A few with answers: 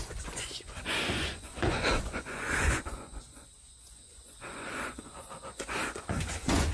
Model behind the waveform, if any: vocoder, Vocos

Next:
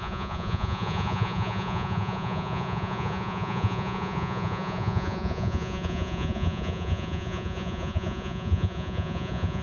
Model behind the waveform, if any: vocoder, Vocos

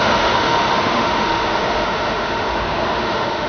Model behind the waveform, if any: autoencoder, DAC-VAE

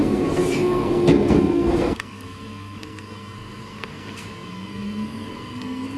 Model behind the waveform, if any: codec, SNAC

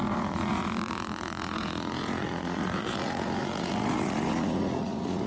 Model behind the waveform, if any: vocoder, Vocos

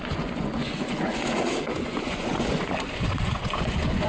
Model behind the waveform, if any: vocoder, Vocos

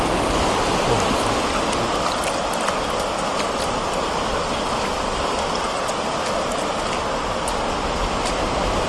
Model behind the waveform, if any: none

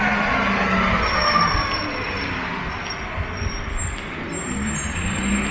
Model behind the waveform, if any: none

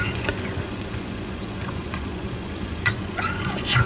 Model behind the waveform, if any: vocoder, Vocos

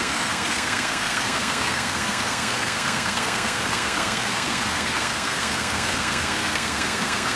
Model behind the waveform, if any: codec, SNAC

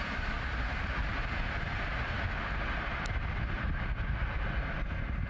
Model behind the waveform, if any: none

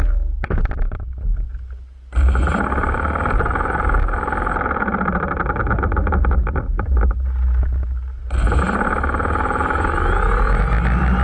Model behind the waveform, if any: none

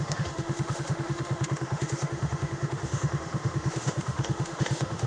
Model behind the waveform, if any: autoencoder, DAC-VAE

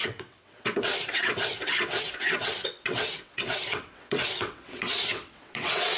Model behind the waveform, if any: vocoder, WaveNeXt